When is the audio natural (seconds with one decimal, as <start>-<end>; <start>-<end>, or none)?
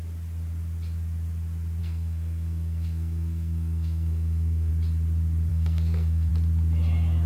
0.0-1.8; 4.7-5.5; 6.3-7.3